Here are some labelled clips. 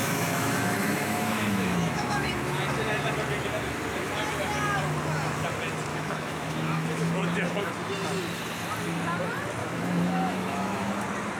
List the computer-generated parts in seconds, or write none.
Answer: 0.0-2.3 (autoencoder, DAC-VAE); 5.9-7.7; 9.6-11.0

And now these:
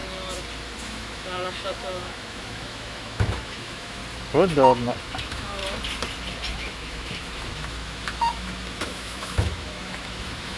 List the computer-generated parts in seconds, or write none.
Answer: 0.8-4.0 (autoencoder, DAC-VAE); 5.0-5.6; 6.5-10.6

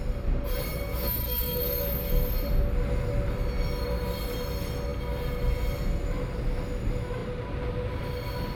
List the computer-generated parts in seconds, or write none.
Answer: 0.9-1.6 (autoencoder, DAC-VAE)